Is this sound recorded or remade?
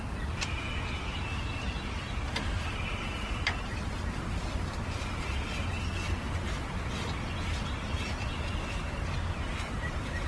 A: recorded